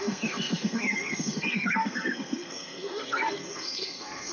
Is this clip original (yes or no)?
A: no